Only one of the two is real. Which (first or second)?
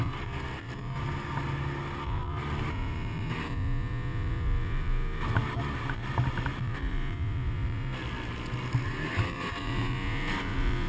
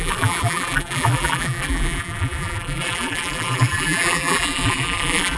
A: first